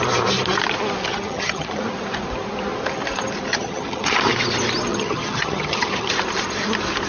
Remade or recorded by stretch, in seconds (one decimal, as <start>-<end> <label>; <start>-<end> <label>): 0.0-1.1 recorded; 1.1-1.8 remade; 1.8-3.5 recorded; 3.5-4.2 remade; 4.2-4.9 recorded; 4.9-6.1 remade; 6.1-7.1 recorded